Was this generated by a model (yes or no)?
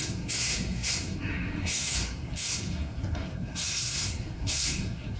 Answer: yes